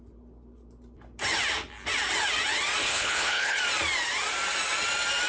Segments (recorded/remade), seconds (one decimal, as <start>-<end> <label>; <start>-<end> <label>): 0.0-2.8 recorded; 2.8-3.6 remade; 3.6-5.3 recorded